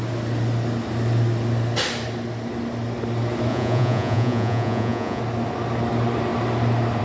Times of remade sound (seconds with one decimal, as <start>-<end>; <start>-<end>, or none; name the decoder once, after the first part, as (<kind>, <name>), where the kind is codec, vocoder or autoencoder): 3.5-5.2 (vocoder, Vocos)

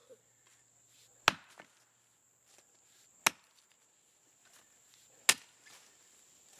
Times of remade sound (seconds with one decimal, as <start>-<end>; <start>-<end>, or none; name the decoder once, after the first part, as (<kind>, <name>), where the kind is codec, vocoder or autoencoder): none

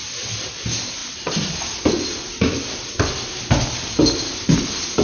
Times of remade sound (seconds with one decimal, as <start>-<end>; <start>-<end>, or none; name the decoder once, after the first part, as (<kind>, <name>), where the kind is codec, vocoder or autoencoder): 0.0-0.5 (vocoder, BigVGAN v2); 1.0-3.4

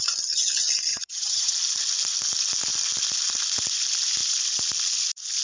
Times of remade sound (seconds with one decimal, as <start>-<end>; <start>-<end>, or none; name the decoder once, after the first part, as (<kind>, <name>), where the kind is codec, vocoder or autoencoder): 0.9-1.5 (vocoder, HiFi-GAN)

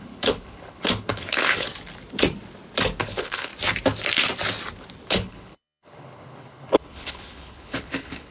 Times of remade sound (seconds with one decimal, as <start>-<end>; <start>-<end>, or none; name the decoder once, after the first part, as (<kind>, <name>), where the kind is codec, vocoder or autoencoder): 0.0-1.7 (codec, HILCodec); 3.0-3.5; 5.1-8.3

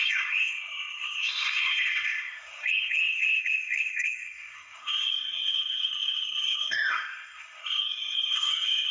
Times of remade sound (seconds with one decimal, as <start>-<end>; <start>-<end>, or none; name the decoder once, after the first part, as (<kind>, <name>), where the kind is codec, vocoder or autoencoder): 0.0-8.9 (codec, SNAC)

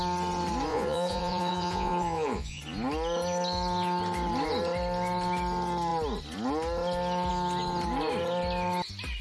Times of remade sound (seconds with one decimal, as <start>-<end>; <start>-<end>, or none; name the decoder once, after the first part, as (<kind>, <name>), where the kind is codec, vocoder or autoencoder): 0.7-2.6 (vocoder, Vocos)